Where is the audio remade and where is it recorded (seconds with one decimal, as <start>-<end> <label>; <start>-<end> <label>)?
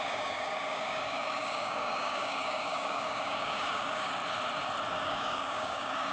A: 0.0-4.2 remade; 4.2-4.9 recorded; 4.9-6.1 remade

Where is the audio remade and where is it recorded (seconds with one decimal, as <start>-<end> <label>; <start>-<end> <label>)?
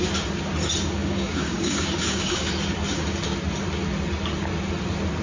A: 0.0-1.0 recorded; 1.0-2.5 remade; 2.5-5.2 recorded